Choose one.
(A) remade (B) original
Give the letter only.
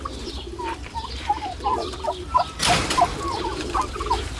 A